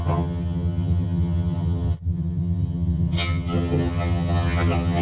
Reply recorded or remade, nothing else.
remade